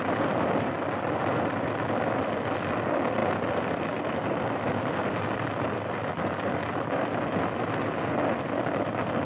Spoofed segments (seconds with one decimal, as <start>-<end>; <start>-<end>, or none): none

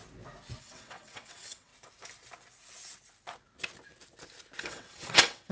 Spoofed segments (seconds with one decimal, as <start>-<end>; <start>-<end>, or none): 0.6-1.7; 4.6-5.5

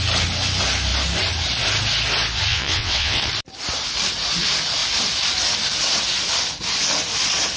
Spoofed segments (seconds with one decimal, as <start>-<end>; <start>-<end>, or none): 2.5-3.3

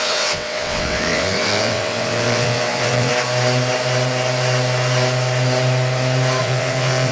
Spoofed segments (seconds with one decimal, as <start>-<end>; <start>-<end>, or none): 0.0-3.1; 6.4-7.1

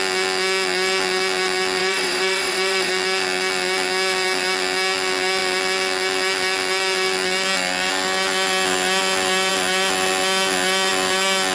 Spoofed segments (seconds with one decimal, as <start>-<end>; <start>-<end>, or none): 1.8-2.9

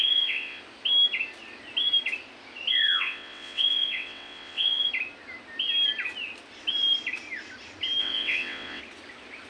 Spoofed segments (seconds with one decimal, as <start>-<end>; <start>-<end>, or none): 0.0-0.6; 2.7-4.9; 8.0-8.8

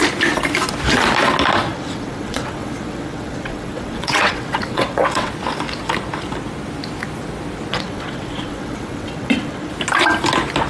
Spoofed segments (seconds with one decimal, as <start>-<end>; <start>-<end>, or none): 1.7-5.3; 7.7-9.7